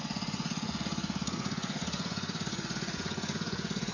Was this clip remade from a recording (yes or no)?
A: yes